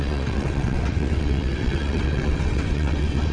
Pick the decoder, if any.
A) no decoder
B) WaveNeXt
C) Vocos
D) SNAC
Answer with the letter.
B